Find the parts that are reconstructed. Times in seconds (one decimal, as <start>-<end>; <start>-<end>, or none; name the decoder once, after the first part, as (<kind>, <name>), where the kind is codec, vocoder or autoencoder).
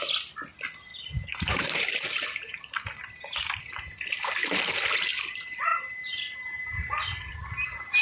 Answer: 0.9-2.6 (vocoder, BigVGAN v2)